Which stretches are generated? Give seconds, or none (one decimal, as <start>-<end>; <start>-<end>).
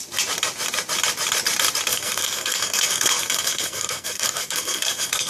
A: 1.9-5.3